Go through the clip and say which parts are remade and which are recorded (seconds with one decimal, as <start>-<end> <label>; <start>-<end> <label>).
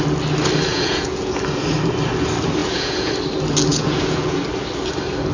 0.0-0.7 recorded; 0.7-1.3 remade; 1.3-2.6 recorded; 2.6-3.1 remade; 3.1-3.7 recorded; 3.7-4.4 remade; 4.4-5.3 recorded